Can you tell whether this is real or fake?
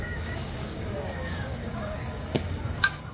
fake